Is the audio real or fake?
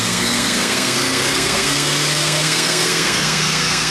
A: fake